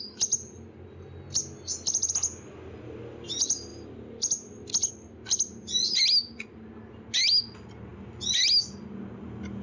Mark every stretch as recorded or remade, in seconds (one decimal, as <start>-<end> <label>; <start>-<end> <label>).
0.0-9.6 recorded